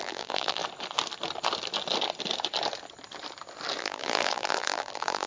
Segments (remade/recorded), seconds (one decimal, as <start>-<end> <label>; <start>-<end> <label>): 0.0-0.6 remade; 0.6-3.8 recorded; 3.8-5.3 remade